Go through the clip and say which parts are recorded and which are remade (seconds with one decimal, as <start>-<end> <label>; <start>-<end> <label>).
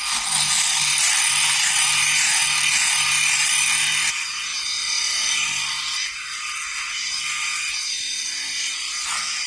0.0-9.5 recorded